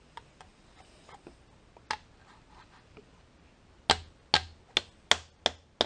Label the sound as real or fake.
real